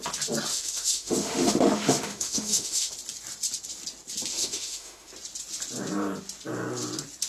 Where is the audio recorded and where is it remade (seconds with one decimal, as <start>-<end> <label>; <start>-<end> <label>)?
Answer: 0.0-0.5 recorded; 0.5-2.9 remade; 2.9-4.3 recorded; 4.3-5.1 remade; 5.1-7.3 recorded

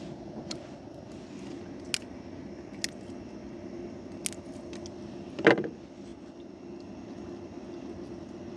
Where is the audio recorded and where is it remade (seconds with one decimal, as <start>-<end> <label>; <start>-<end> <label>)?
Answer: 0.0-8.6 recorded

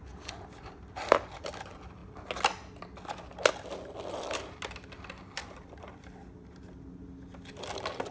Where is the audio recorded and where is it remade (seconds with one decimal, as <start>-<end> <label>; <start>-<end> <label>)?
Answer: 0.0-8.1 recorded

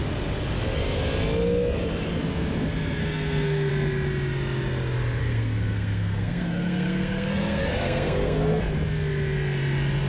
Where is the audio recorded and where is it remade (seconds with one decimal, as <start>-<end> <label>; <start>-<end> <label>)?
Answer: 0.0-3.0 recorded; 3.0-3.7 remade; 3.7-5.2 recorded; 5.2-8.6 remade; 8.6-10.1 recorded

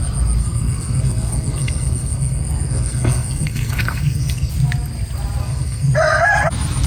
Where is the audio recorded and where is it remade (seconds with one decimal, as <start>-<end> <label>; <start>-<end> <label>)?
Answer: 0.0-0.4 recorded; 0.4-4.5 remade; 4.5-5.4 recorded; 5.4-5.9 remade; 5.9-6.9 recorded

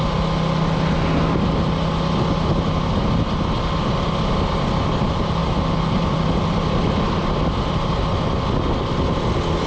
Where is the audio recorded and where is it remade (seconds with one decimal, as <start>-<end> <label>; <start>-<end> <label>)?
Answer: 0.0-9.7 recorded

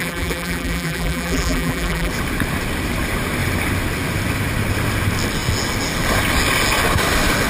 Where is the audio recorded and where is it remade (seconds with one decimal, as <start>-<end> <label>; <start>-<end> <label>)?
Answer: 0.0-2.1 remade; 2.1-7.5 recorded